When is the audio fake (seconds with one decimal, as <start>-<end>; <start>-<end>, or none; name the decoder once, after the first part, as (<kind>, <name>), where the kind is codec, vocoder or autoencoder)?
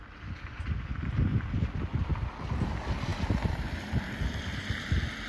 none